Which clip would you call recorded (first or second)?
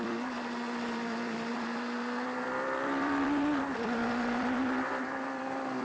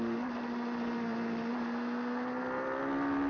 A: second